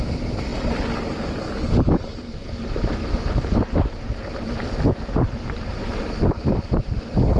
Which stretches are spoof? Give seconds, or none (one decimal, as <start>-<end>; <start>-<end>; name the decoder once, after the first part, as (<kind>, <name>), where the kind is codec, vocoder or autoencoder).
3.0-6.0 (vocoder, BigVGAN v2)